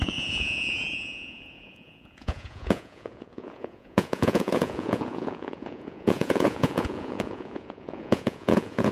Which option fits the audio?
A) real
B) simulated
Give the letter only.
B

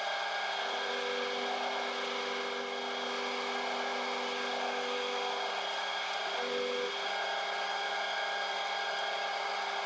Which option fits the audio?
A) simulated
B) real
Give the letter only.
B